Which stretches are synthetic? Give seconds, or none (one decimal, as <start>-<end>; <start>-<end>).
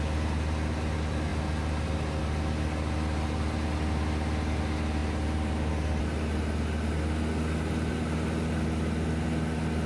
none